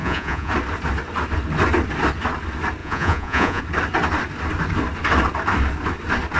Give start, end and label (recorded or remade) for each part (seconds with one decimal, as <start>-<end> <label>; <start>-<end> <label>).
0.0-0.5 remade; 0.5-2.8 recorded; 2.8-3.6 remade; 3.6-6.4 recorded